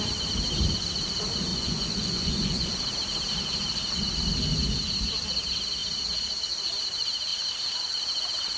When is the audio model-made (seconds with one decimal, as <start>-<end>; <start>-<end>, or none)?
1.5-2.7